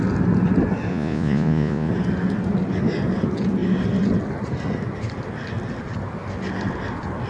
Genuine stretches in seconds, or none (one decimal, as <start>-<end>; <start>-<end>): 0.0-0.9; 1.9-7.3